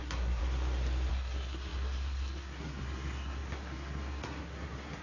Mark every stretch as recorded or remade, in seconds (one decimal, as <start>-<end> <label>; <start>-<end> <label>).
0.0-0.4 remade; 0.4-1.1 recorded; 1.1-5.0 remade